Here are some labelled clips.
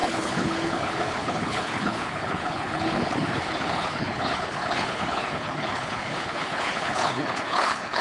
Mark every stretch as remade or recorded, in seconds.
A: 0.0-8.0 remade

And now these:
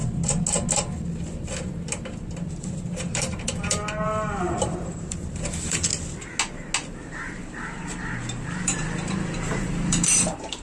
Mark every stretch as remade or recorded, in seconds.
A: 0.0-2.5 recorded; 2.5-5.9 remade; 5.9-6.9 recorded; 6.9-10.6 remade